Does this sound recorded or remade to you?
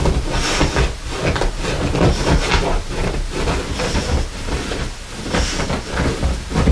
recorded